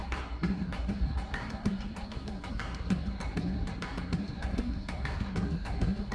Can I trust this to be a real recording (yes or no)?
no